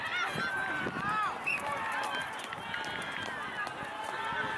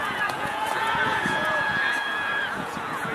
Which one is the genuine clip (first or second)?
first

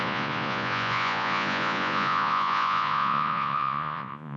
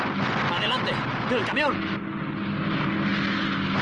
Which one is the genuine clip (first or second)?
second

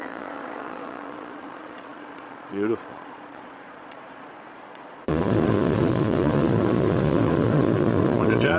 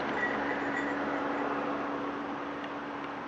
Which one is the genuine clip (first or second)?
second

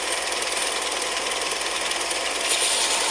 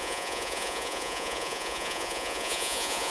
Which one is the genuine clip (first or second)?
first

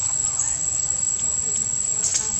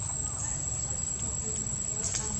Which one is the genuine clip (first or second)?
second